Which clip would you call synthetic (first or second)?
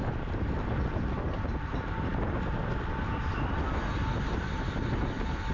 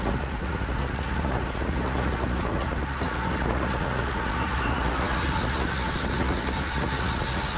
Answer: second